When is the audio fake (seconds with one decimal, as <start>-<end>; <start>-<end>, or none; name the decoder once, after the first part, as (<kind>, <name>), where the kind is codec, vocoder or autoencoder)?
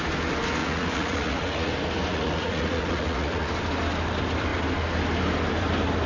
0.6-1.7 (vocoder, Vocos); 2.1-3.5